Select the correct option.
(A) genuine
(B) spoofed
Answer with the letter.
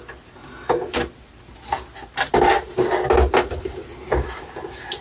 A